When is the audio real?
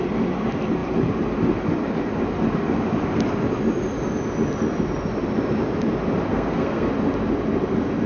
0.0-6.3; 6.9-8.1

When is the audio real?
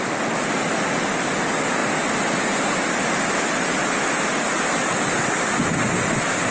0.0-6.5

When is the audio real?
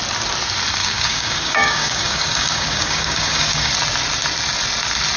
0.0-0.8; 3.7-5.2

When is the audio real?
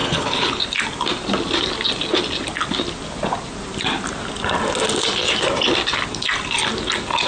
0.6-7.3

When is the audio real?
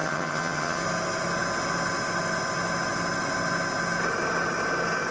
0.8-5.1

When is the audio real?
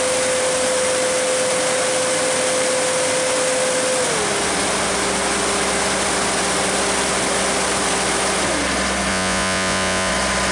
0.0-9.1; 10.1-10.5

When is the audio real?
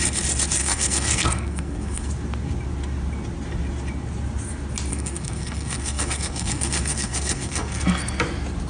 0.0-0.6; 2.1-4.9; 8.2-8.7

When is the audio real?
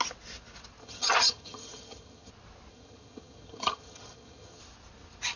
0.0-0.8; 2.3-2.7; 4.6-5.4